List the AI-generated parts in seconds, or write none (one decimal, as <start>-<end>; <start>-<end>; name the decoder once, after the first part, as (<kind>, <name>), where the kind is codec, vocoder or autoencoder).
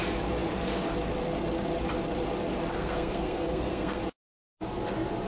2.7-4.0 (codec, SNAC)